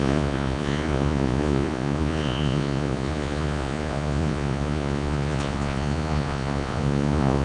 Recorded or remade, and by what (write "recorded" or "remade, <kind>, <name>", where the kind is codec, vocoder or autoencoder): remade, vocoder, Vocos